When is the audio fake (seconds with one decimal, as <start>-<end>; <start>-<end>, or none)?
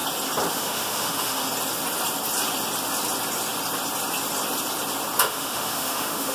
0.5-1.4; 5.2-6.3